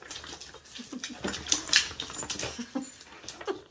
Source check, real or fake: real